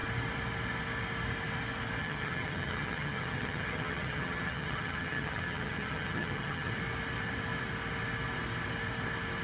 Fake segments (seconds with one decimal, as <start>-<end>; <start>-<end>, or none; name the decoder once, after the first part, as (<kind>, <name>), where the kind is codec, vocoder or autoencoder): 2.0-6.7 (vocoder, HiFi-GAN)